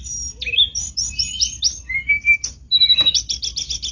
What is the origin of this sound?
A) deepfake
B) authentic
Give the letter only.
B